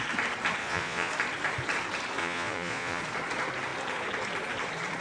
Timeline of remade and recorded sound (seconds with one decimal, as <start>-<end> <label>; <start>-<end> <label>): 0.0-0.6 recorded; 0.6-1.1 remade; 1.1-2.2 recorded; 2.2-3.0 remade; 3.0-5.0 recorded